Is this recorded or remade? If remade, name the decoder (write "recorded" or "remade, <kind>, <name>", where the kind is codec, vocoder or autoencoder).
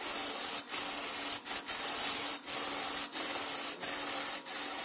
recorded